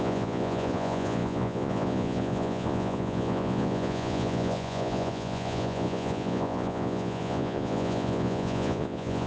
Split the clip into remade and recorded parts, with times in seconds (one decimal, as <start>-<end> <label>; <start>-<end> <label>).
0.0-9.3 remade